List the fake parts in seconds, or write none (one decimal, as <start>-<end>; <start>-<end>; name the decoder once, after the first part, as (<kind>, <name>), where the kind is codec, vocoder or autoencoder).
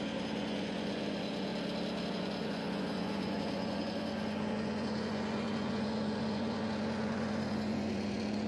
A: 0.0-1.5 (vocoder, Vocos); 2.1-8.5